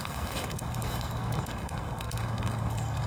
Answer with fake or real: fake